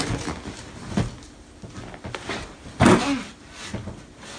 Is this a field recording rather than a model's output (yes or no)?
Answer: yes